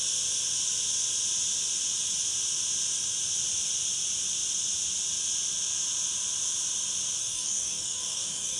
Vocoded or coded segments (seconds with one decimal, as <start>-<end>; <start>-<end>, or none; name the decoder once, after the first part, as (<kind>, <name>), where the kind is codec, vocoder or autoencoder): 7.2-8.6 (codec, DAC)